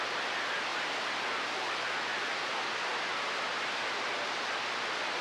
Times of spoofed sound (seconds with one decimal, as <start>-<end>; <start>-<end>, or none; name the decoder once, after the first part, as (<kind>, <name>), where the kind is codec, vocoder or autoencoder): none